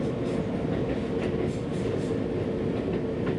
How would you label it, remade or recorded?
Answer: recorded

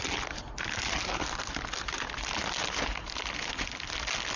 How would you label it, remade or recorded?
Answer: recorded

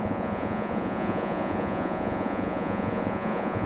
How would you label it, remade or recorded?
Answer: remade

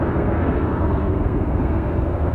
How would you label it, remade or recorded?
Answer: remade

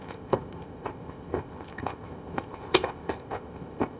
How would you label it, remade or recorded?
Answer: remade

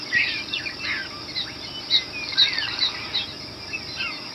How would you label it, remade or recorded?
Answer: recorded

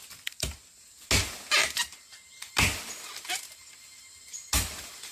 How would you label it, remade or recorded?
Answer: recorded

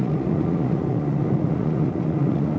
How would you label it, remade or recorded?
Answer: remade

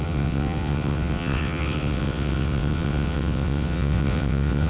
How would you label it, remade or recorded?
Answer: remade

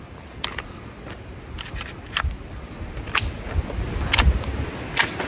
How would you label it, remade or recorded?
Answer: recorded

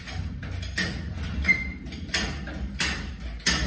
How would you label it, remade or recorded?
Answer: recorded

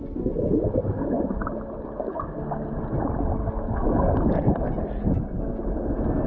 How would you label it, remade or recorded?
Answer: recorded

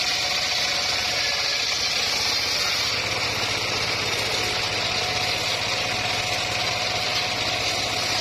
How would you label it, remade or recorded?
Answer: recorded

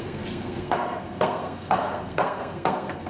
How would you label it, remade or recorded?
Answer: remade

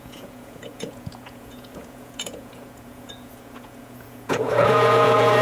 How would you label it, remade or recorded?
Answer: remade